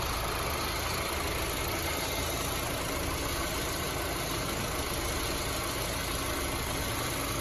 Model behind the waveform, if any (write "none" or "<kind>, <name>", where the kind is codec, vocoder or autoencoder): none